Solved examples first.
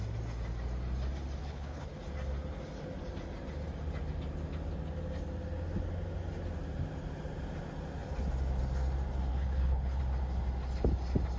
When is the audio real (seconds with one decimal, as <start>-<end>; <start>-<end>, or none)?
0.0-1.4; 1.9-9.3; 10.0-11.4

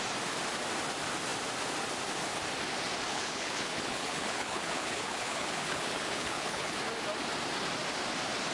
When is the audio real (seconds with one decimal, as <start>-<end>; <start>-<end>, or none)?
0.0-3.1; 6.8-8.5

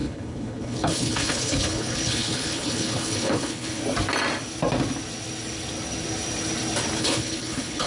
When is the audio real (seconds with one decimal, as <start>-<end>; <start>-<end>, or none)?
3.8-7.0